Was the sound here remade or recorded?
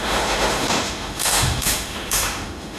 remade